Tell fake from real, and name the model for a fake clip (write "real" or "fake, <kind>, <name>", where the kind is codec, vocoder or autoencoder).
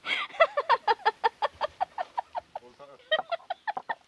real